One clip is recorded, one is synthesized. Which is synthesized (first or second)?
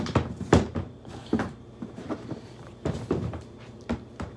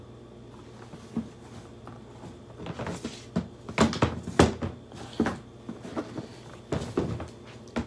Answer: first